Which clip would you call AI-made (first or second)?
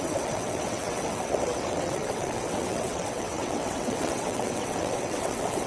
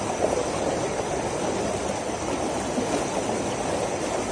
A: first